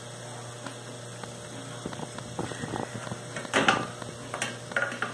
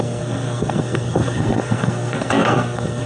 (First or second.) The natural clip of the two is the first